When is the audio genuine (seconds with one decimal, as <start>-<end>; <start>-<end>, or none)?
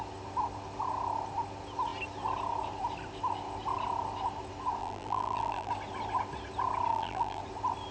0.0-4.8; 5.7-6.9; 7.4-7.9